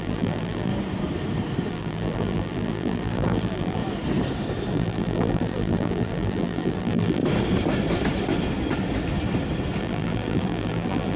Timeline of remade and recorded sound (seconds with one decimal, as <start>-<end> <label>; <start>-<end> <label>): 0.0-0.7 remade; 0.7-1.7 recorded; 1.7-3.8 remade; 3.8-4.7 recorded; 4.7-7.2 remade; 7.2-9.8 recorded; 9.8-11.2 remade